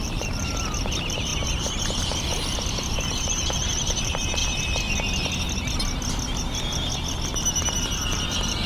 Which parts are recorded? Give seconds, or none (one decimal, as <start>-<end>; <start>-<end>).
1.3-2.6; 4.4-7.8